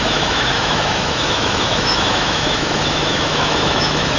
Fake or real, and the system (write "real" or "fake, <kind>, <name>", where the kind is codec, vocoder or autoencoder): fake, autoencoder, DAC-VAE